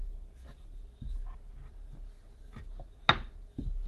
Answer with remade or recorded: recorded